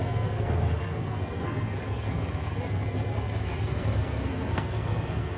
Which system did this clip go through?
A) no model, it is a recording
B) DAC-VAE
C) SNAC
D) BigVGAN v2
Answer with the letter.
C